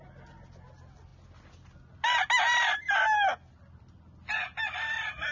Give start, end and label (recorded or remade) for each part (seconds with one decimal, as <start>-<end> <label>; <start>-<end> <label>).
0.0-5.3 recorded